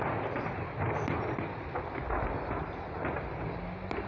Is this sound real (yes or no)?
yes